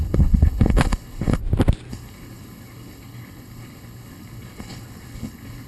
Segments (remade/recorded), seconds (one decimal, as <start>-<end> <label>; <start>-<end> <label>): 0.0-1.4 remade; 1.4-1.9 recorded; 1.9-5.7 remade